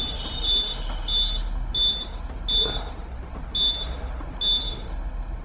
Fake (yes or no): no